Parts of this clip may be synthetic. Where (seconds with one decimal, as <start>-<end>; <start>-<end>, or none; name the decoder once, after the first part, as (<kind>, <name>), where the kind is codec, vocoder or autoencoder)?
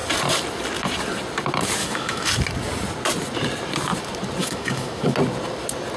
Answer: 1.8-2.3 (autoencoder, DAC-VAE); 4.4-5.1